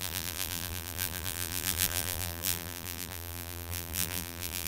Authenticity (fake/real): fake